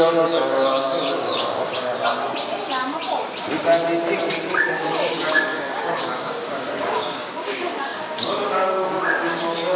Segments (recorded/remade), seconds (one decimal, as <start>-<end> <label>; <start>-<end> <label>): 0.0-1.9 remade; 1.9-4.8 recorded; 4.8-9.8 remade